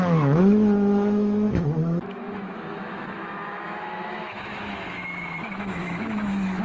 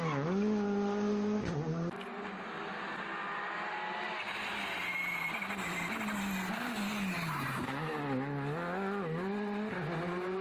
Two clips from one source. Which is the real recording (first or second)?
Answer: second